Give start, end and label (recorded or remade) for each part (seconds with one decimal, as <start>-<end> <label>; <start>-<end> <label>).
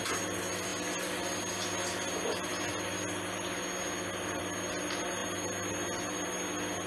0.0-6.9 recorded